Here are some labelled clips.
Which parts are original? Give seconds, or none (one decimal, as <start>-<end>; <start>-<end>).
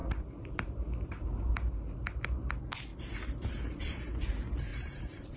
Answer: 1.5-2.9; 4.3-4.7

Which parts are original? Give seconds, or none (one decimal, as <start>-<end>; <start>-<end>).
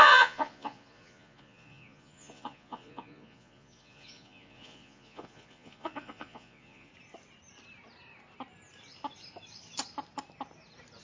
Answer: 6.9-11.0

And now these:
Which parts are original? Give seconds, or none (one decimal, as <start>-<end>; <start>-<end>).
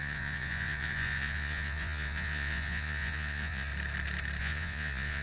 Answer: 3.7-4.4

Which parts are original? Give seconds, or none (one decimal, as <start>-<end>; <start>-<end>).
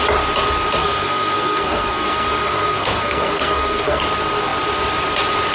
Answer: 0.0-0.8; 4.0-5.5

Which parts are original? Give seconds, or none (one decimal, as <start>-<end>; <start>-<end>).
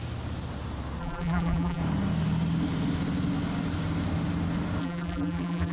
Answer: 0.0-1.0; 1.8-4.8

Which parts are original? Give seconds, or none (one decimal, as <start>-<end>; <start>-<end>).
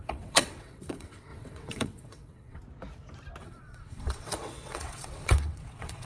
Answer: 2.6-3.4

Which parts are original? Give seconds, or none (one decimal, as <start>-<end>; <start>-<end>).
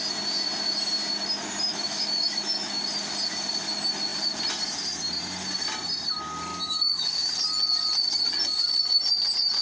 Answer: 0.0-1.7; 2.8-6.5; 7.3-9.6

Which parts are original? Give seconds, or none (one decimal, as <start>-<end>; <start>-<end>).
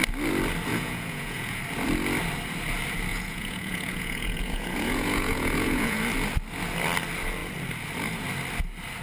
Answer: 0.0-0.7; 1.6-3.1; 6.0-9.0